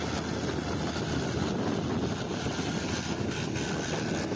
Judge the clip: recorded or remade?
recorded